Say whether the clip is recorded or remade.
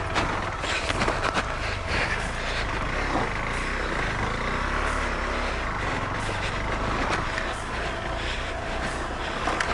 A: recorded